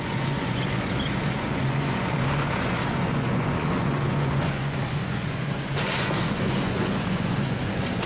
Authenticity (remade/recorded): remade